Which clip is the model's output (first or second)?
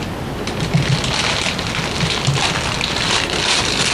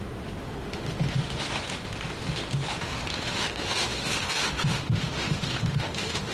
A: second